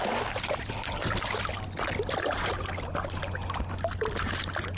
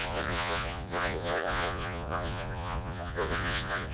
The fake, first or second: second